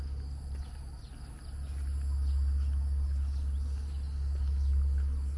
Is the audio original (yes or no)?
yes